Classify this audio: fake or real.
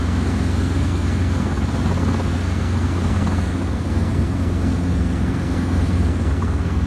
fake